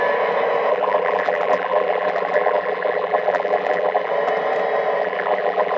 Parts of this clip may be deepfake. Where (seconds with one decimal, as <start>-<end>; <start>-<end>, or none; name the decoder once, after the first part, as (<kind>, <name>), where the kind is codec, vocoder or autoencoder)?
0.7-4.1 (vocoder, BigVGAN v2); 5.0-5.8